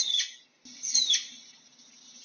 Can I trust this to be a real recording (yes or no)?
yes